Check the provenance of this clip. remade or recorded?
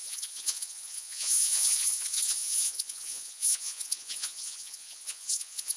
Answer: remade